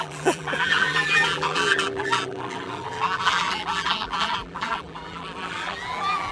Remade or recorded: remade